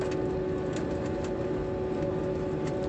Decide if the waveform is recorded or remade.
recorded